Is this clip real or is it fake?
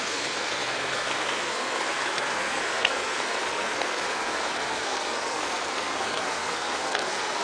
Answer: fake